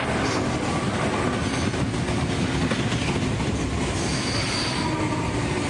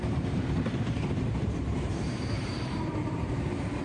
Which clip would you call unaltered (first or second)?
first